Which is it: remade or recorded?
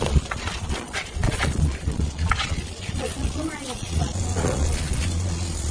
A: remade